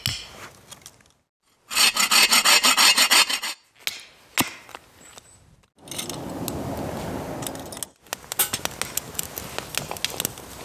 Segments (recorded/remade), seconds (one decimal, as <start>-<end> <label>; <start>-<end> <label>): 0.0-10.6 recorded